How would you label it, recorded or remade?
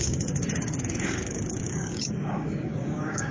remade